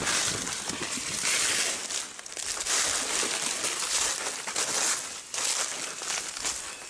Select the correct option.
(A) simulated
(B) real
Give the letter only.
B